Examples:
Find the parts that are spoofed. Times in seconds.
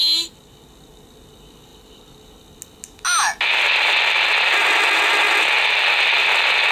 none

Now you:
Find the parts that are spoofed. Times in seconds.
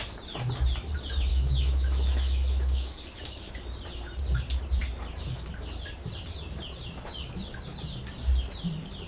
1.3-3.5